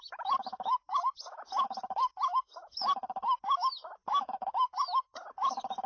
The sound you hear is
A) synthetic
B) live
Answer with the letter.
A